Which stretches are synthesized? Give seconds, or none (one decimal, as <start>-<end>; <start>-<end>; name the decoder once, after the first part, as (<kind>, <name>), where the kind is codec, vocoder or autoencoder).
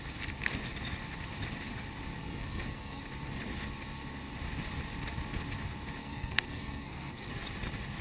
2.2-3.0 (codec, SNAC); 6.0-7.3